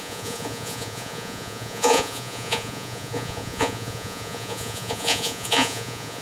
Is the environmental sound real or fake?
fake